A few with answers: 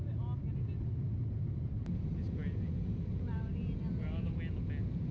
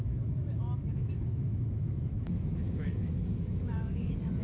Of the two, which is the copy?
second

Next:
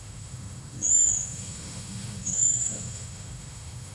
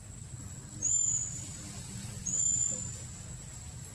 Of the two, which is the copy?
first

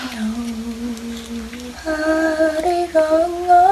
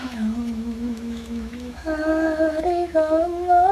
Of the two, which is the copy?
second